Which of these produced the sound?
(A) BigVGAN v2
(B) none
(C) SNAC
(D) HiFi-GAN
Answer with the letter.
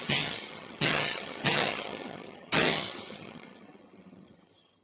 D